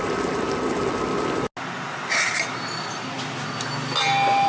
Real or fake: real